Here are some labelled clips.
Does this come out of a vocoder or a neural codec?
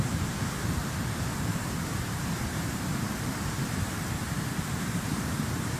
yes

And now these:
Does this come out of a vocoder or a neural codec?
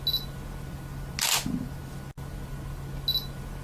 no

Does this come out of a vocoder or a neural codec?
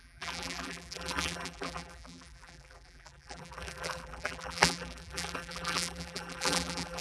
yes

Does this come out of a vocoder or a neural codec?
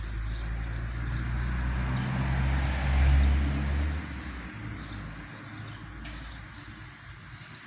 no